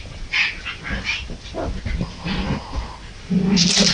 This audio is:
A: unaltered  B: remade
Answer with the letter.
A